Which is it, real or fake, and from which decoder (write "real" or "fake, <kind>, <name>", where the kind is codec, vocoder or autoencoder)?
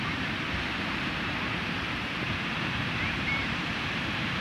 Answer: fake, vocoder, BigVGAN v2